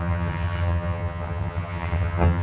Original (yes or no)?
no